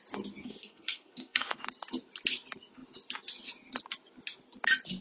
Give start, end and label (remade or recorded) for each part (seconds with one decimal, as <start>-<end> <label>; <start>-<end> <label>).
0.0-0.4 recorded; 0.4-1.5 remade; 1.5-5.0 recorded